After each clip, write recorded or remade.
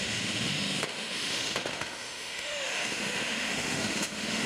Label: remade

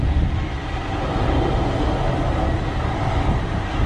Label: recorded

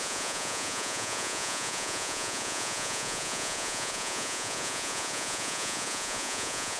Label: remade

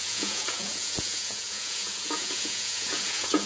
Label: remade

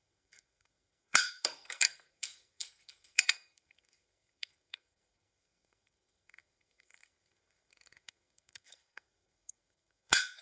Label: remade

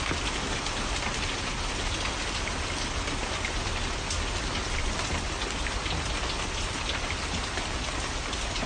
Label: recorded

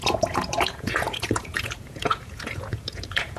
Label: remade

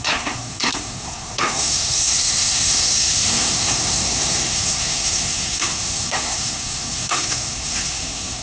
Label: remade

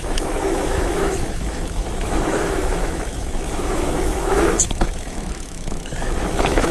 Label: remade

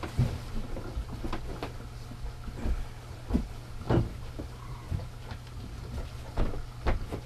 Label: recorded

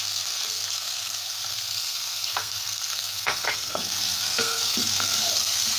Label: remade